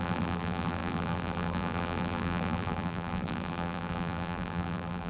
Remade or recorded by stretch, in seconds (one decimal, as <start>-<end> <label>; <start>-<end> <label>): 0.0-5.1 remade